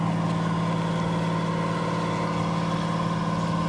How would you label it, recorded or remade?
recorded